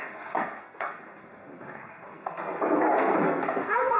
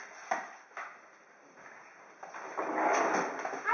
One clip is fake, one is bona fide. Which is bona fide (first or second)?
second